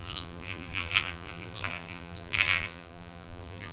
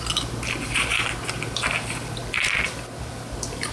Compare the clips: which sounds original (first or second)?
second